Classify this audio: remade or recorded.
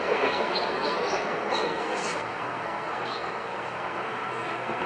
remade